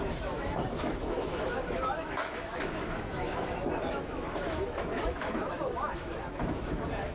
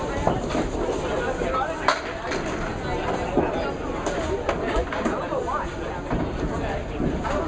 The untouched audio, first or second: second